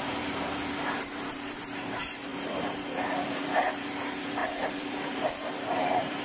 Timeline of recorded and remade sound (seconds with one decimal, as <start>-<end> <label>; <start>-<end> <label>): 0.0-6.2 remade